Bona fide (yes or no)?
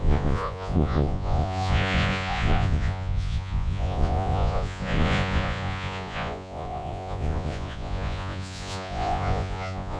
no